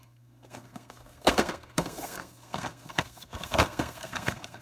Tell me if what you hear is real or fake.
fake